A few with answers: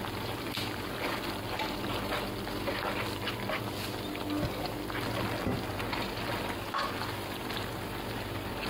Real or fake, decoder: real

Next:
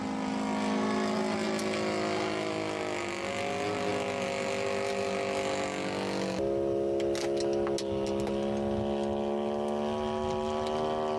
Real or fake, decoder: real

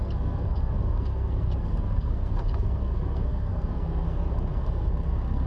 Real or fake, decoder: fake, codec, SNAC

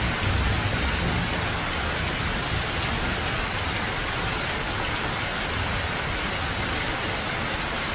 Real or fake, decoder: real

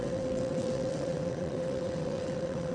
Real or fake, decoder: fake, vocoder, WaveNeXt